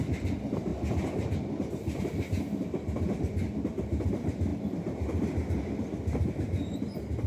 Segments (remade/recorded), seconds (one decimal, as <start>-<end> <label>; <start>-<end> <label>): 0.0-7.3 recorded